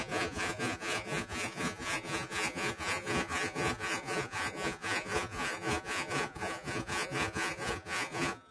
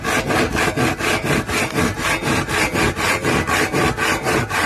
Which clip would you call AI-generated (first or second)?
first